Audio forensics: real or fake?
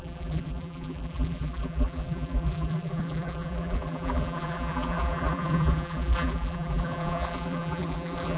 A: fake